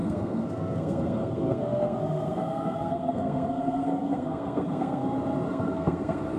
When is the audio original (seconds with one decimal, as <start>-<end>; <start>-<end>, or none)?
5.0-5.5